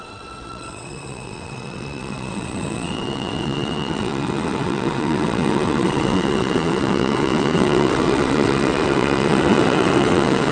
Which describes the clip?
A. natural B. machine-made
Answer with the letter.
B